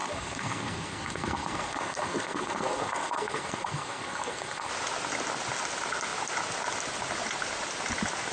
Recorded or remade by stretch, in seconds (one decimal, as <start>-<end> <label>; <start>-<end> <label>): 0.0-4.7 remade; 4.7-8.3 recorded